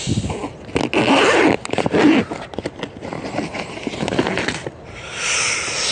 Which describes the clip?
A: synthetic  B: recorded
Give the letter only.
B